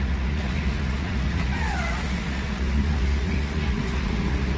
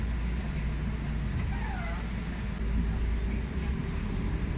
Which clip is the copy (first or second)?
first